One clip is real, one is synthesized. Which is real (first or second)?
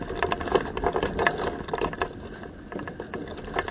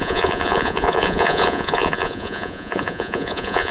first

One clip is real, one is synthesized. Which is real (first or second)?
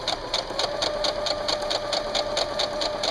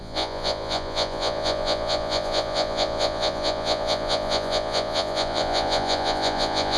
first